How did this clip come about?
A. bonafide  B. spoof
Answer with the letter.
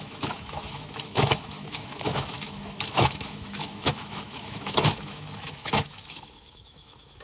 B